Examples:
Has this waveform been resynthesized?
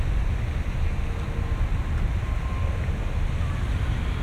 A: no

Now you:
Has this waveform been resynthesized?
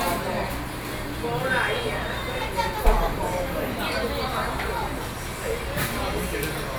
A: no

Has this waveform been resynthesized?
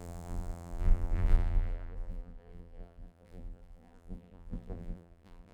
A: yes